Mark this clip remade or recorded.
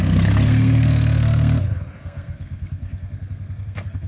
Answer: remade